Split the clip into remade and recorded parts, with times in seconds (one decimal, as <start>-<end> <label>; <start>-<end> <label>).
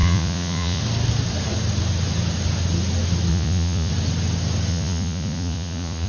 0.0-0.8 remade; 0.8-3.3 recorded; 3.3-3.9 remade; 3.9-4.7 recorded; 4.7-6.1 remade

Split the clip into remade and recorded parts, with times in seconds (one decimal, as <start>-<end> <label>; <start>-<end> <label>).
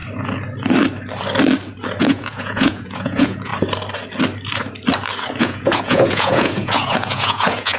0.0-2.0 recorded; 2.0-3.5 remade; 3.5-5.4 recorded; 5.4-7.8 remade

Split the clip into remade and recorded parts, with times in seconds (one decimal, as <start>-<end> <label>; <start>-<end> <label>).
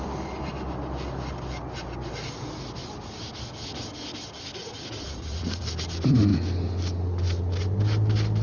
0.0-4.6 recorded; 4.6-5.6 remade; 5.6-8.4 recorded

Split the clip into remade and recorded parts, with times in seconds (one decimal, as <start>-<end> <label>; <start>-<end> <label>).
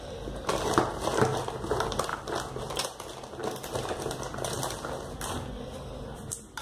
0.0-6.6 recorded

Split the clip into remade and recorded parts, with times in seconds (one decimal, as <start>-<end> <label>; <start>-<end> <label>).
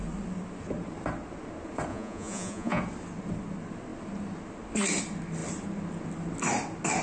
0.0-1.9 recorded; 1.9-2.8 remade; 2.8-7.0 recorded